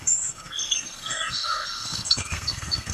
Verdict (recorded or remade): remade